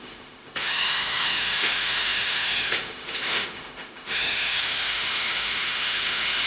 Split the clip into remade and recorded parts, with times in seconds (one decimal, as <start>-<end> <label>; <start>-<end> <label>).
0.0-6.5 remade